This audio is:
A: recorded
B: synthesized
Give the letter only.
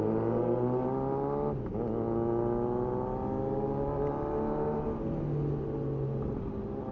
A